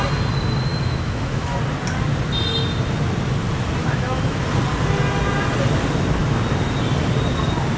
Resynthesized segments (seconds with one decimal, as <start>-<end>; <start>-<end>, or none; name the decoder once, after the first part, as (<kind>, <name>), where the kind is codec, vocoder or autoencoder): 0.7-1.6 (autoencoder, DAC-VAE); 3.8-4.4